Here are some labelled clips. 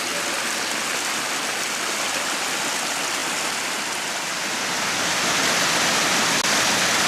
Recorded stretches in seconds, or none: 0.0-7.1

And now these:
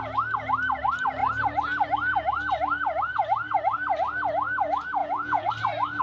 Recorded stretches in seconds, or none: 0.0-5.0; 5.5-6.0

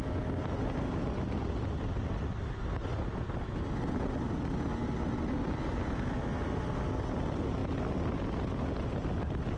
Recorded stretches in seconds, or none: 0.0-9.6

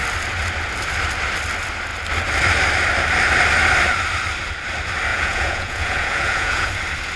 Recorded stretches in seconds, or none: 0.0-5.1; 6.7-7.2

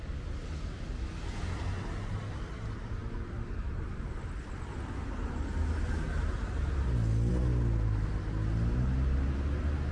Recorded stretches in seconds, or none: 0.0-9.9

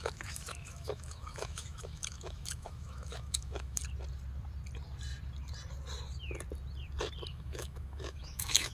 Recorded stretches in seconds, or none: 3.8-7.3

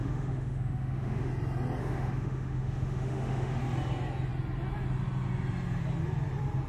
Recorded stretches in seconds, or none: 1.3-1.8; 3.6-6.7